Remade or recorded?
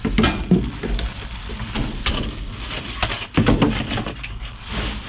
recorded